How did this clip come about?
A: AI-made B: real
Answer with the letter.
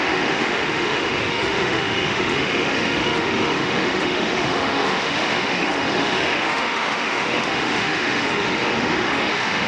A